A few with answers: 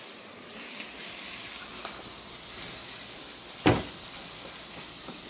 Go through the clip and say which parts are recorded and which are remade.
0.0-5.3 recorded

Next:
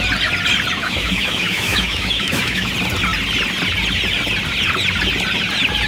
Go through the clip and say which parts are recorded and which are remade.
0.0-0.8 recorded; 0.8-2.7 remade; 2.7-5.9 recorded

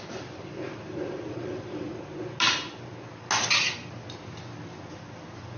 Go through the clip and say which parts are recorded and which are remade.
0.0-1.9 remade; 1.9-5.6 recorded

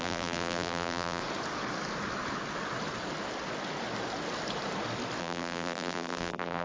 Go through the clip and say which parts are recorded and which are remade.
0.0-1.2 remade; 1.2-5.2 recorded; 5.2-6.6 remade

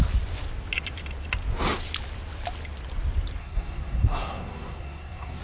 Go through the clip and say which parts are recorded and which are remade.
0.0-3.4 recorded; 3.4-5.4 remade

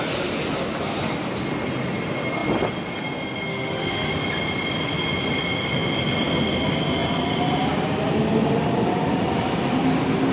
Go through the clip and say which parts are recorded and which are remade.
0.0-3.5 recorded; 3.5-4.1 remade; 4.1-10.3 recorded